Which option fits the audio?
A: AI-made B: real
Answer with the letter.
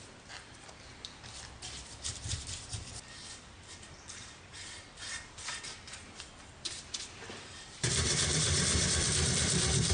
A